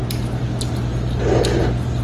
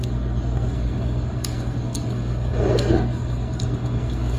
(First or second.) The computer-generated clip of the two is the second